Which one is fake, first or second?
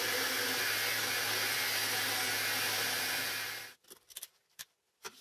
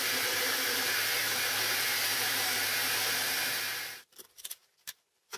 second